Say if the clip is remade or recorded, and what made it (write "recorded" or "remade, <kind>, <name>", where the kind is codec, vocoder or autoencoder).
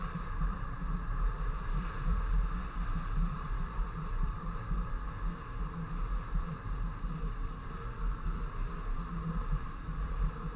remade, vocoder, BigVGAN v2